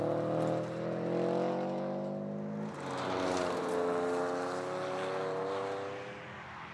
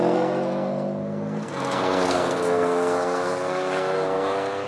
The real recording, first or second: first